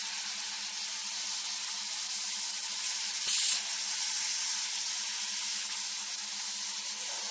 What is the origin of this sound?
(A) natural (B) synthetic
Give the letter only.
A